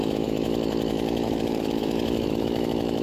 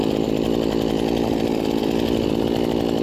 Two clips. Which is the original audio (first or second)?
second